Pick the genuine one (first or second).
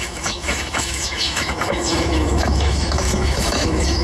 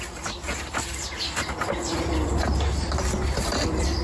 second